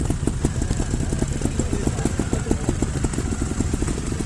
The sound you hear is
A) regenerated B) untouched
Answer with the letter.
B